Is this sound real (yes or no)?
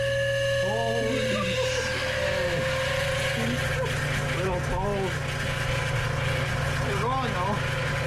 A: yes